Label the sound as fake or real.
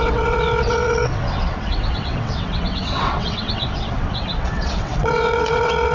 fake